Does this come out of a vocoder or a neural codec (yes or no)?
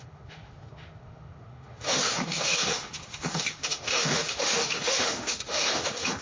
yes